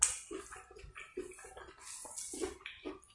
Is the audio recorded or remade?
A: recorded